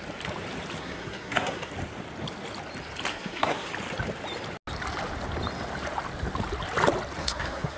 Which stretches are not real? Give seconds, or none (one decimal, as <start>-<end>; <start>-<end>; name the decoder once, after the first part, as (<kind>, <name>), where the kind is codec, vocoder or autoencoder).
0.8-1.7 (codec, SNAC); 3.1-3.7; 7.2-7.8